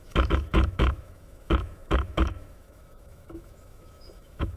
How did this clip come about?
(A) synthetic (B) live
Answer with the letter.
A